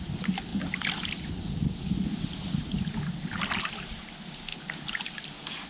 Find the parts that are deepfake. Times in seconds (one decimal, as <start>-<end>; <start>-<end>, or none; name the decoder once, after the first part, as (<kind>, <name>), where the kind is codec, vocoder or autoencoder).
none

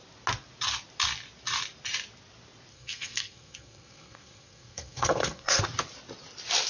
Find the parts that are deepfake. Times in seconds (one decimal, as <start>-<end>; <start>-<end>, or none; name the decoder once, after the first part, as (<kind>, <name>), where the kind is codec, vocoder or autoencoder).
2.7-5.6 (codec, SNAC)

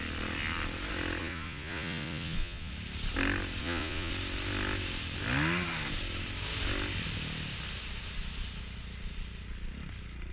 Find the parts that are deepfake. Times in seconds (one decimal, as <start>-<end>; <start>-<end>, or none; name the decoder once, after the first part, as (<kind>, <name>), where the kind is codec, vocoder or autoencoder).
1.2-2.7 (vocoder, Vocos); 3.6-4.1

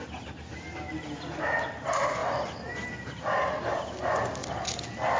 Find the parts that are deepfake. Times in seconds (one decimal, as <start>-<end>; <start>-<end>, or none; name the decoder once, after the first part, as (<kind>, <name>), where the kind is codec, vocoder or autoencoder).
none

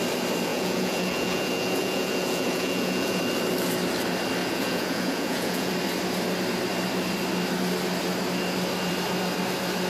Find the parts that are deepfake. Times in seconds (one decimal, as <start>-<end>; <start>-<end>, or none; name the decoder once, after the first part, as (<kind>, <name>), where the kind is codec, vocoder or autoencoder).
0.5-3.2 (vocoder, Vocos); 4.4-5.7